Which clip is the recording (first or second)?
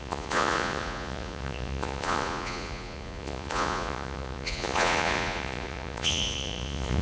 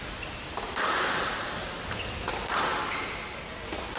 second